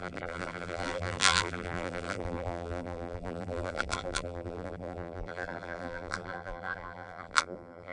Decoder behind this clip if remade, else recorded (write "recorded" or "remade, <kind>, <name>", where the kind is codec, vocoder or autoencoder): remade, vocoder, BigVGAN v2